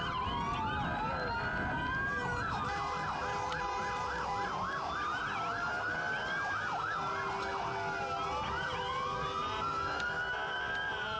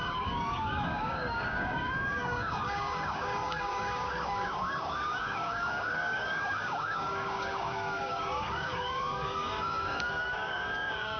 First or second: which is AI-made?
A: second